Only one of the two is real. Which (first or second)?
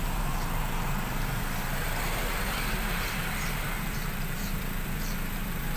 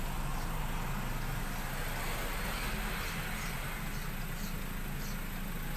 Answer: second